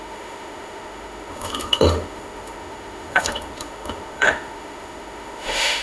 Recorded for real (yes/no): no